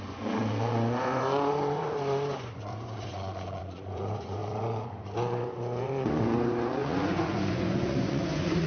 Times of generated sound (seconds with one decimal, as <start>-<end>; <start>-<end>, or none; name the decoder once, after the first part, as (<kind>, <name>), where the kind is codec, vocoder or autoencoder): 0.0-8.7 (vocoder, Vocos)